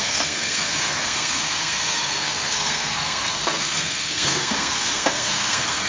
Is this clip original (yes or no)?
no